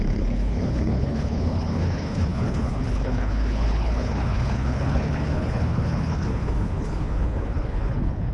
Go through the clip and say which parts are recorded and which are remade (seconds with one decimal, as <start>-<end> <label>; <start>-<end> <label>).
0.0-8.3 remade